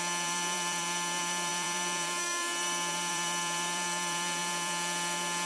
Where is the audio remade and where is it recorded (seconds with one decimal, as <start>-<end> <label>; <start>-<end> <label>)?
0.0-5.5 remade